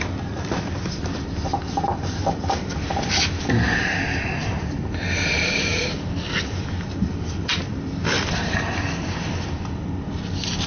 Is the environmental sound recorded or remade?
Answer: remade